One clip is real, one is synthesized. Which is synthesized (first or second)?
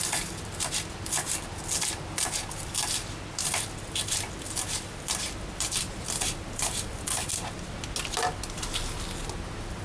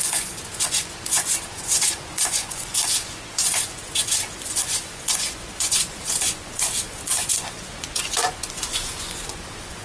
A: second